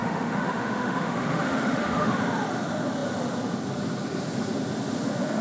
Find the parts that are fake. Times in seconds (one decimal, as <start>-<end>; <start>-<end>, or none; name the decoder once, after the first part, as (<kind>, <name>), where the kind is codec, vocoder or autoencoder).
0.0-2.1 (autoencoder, DAC-VAE)